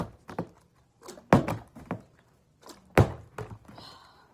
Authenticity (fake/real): real